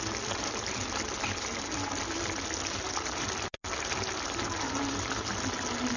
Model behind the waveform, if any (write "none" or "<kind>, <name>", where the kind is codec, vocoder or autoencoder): none